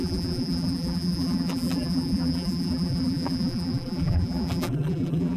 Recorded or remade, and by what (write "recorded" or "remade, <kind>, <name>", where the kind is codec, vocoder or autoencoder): remade, vocoder, BigVGAN v2